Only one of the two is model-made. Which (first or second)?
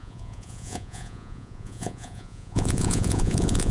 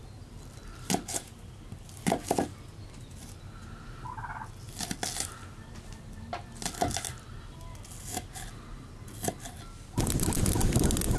first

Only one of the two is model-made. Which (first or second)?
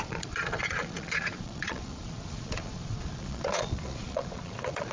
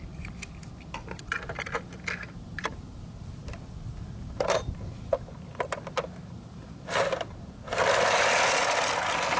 first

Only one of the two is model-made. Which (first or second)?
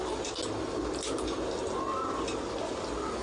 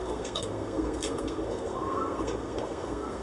second